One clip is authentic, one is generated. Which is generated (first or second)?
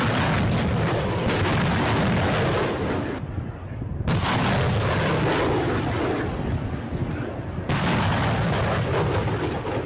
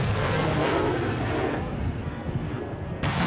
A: second